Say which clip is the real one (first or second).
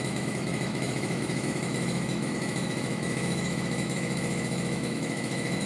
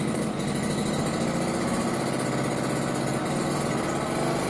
second